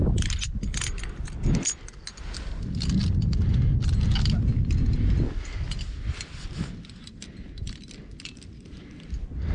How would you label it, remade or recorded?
recorded